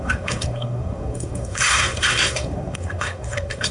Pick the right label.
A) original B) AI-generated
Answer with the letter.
B